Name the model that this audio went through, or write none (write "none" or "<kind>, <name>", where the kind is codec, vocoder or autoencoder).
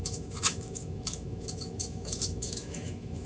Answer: autoencoder, DAC-VAE